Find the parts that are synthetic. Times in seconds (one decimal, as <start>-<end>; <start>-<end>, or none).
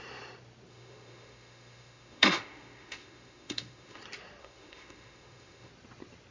0.7-4.0; 4.4-5.7